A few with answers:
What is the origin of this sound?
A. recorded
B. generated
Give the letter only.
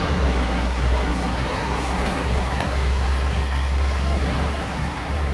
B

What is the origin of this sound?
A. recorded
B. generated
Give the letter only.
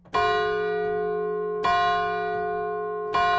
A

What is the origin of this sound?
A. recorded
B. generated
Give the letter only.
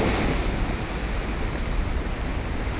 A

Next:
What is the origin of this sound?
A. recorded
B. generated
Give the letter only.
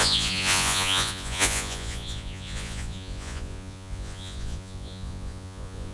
B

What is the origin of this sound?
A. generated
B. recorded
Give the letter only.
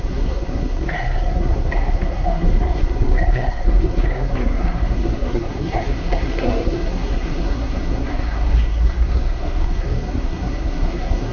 A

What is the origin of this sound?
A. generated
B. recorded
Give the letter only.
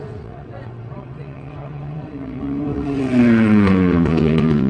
A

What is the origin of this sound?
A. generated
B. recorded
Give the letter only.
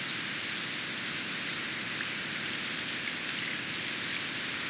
B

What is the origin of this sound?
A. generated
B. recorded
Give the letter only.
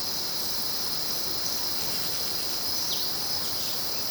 B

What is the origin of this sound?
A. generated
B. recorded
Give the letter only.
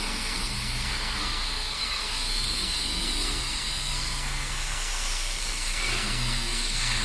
A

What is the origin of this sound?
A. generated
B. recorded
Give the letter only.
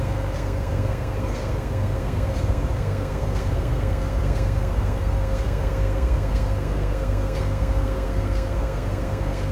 A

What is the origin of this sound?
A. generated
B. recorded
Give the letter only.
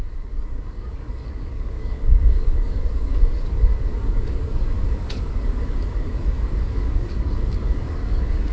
A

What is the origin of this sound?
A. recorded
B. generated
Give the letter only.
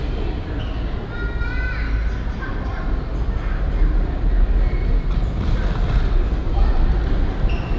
A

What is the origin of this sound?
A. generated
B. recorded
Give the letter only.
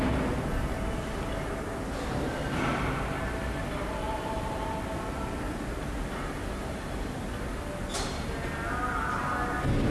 B